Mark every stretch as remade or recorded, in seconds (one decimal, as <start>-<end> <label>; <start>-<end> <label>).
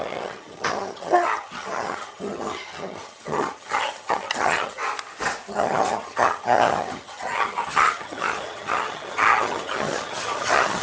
0.0-4.8 remade; 4.8-5.5 recorded; 5.5-10.8 remade